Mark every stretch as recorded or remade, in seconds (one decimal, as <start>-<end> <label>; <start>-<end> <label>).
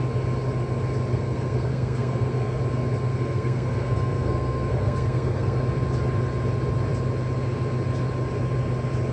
0.0-1.1 recorded; 1.1-2.6 remade; 2.6-3.1 recorded; 3.1-5.6 remade; 5.6-9.1 recorded